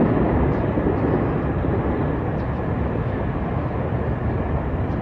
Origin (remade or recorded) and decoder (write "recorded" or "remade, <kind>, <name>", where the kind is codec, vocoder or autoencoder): recorded